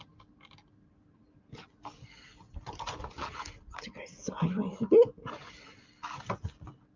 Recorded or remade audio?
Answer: recorded